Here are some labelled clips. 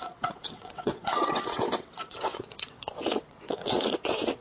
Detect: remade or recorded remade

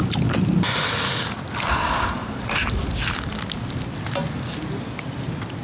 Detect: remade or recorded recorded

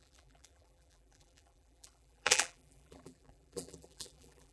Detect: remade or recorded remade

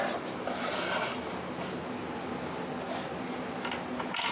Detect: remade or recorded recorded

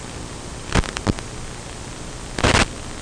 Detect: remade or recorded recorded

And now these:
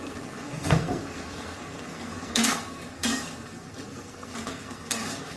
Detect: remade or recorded remade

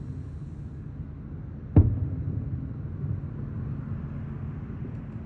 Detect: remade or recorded recorded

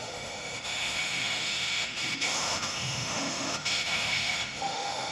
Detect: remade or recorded remade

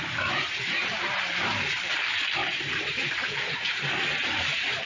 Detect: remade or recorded remade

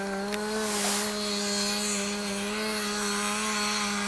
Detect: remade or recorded recorded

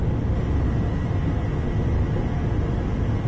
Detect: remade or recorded recorded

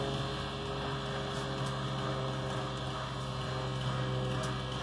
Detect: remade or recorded recorded